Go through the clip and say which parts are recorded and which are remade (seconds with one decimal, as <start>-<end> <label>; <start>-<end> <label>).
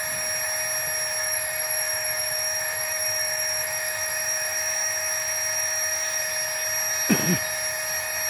0.0-1.2 recorded; 1.2-6.2 remade; 6.2-8.3 recorded